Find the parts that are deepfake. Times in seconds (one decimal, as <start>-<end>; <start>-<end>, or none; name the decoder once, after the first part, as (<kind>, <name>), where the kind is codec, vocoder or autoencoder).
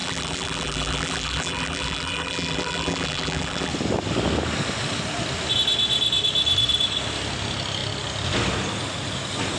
0.0-3.7 (vocoder, BigVGAN v2)